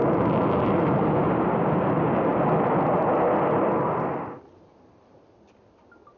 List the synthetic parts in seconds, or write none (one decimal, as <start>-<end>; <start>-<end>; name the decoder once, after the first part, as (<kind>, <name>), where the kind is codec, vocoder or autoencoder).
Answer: none